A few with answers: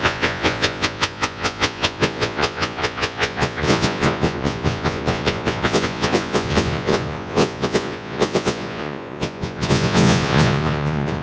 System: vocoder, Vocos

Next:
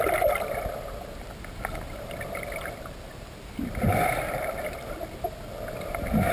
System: none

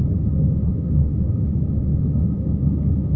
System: autoencoder, DAC-VAE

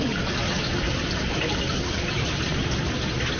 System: none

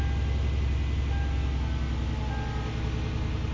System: none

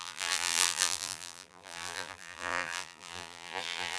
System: vocoder, BigVGAN v2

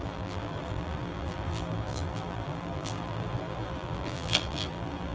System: vocoder, BigVGAN v2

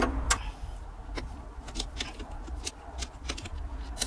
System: none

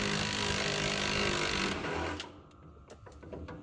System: none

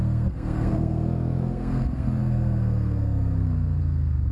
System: codec, SNAC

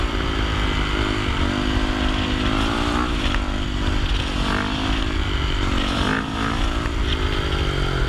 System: none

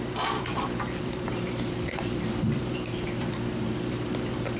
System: vocoder, BigVGAN v2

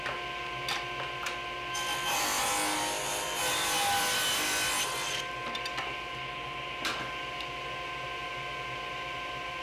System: none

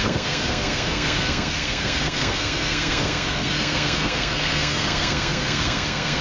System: codec, SNAC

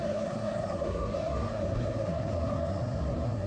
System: codec, SNAC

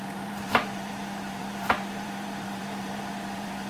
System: vocoder, BigVGAN v2